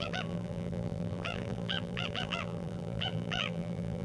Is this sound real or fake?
fake